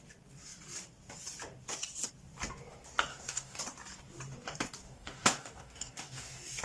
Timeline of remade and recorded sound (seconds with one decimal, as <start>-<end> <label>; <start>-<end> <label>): 0.0-3.1 recorded; 3.1-3.6 remade; 3.6-4.8 recorded; 4.8-6.6 remade